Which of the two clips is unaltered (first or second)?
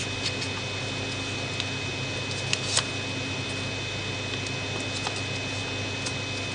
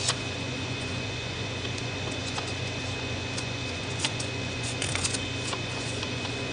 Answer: first